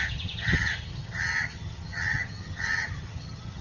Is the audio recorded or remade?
remade